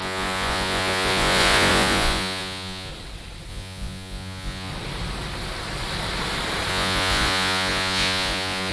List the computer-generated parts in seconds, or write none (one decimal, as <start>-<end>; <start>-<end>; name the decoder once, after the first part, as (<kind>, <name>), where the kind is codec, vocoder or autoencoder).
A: 0.0-2.9 (vocoder, Vocos); 3.5-4.7; 6.7-8.7

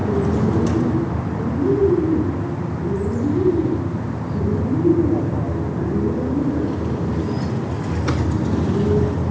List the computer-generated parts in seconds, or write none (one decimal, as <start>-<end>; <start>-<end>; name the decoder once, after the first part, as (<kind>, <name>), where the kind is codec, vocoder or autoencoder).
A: none

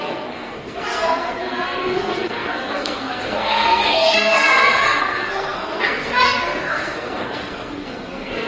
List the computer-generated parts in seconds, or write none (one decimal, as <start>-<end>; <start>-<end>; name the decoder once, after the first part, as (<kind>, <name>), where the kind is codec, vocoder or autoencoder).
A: 0.0-8.5 (codec, SNAC)